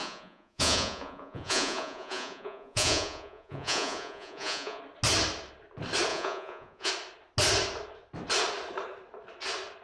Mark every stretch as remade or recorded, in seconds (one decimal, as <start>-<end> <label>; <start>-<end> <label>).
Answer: 0.0-4.8 remade; 4.8-6.1 recorded; 6.1-6.9 remade; 6.9-9.8 recorded

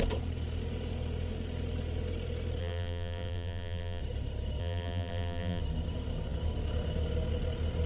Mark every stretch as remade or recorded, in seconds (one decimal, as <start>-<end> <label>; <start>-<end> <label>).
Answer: 0.0-2.6 recorded; 2.6-4.0 remade; 4.0-4.6 recorded; 4.6-5.6 remade; 5.6-7.9 recorded

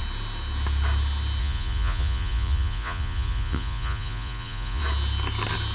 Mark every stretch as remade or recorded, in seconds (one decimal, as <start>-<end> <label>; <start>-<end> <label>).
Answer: 0.0-1.4 recorded; 1.4-4.8 remade; 4.8-5.7 recorded

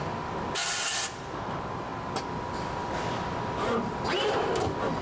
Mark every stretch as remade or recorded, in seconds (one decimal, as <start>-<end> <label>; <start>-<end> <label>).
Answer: 0.0-5.0 recorded

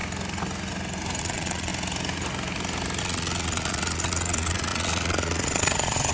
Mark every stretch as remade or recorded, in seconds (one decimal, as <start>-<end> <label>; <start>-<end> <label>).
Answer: 0.0-1.2 recorded; 1.2-1.7 remade; 1.7-3.0 recorded; 3.0-6.1 remade

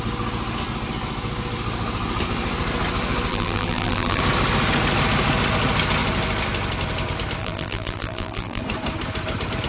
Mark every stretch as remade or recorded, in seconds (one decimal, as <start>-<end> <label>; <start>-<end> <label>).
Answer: 0.0-3.3 recorded; 3.3-4.2 remade; 4.2-7.4 recorded; 7.4-8.6 remade; 8.6-9.7 recorded

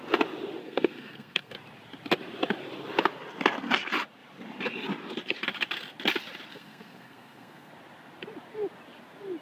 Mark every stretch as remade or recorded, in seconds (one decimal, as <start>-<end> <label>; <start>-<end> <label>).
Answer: 0.0-0.6 recorded; 0.6-1.5 remade; 1.5-6.5 recorded; 6.5-7.7 remade; 7.7-9.4 recorded